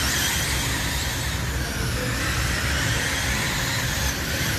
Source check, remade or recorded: recorded